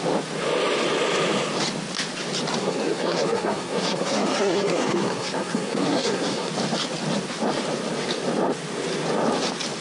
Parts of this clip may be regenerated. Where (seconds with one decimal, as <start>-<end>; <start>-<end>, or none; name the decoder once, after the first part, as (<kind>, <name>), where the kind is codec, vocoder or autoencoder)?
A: 2.6-6.5 (codec, SNAC)